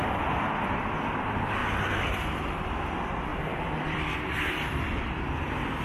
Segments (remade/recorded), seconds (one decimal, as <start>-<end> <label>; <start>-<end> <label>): 0.0-3.3 recorded; 3.3-5.2 remade; 5.2-5.8 recorded